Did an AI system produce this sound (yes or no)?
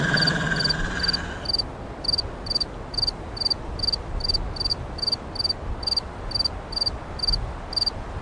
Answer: no